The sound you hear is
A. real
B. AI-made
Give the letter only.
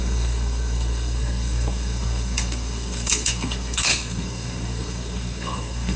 B